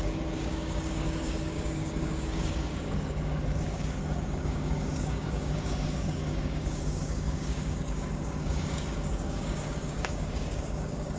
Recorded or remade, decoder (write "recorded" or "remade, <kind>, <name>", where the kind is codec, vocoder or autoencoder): remade, codec, DAC